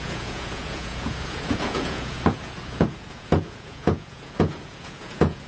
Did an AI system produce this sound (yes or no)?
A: yes